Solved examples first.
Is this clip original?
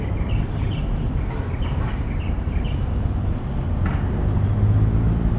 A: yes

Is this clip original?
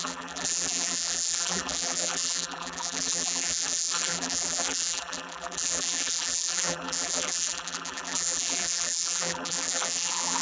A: no